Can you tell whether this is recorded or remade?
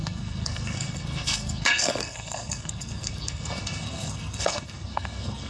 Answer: remade